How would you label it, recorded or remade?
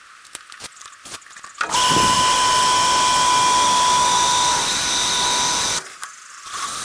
recorded